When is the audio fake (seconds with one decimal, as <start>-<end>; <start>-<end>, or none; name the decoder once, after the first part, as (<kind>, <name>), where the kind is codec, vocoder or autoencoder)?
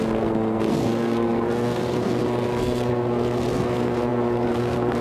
0.0-5.0 (codec, SNAC)